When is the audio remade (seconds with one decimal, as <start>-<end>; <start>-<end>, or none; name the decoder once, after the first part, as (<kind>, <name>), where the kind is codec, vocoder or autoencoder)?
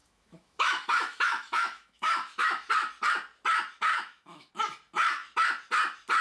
0.0-2.7 (autoencoder, DAC-VAE); 3.9-4.5